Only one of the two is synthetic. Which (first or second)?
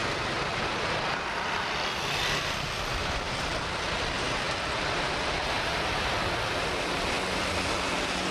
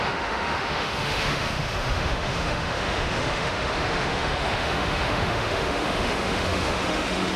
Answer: second